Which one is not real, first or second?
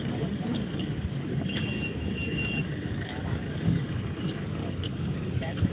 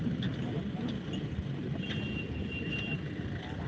first